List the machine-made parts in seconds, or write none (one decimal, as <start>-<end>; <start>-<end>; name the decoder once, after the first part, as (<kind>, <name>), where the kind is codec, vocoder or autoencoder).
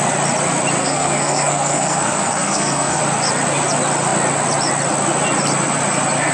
0.8-3.0 (codec, SNAC)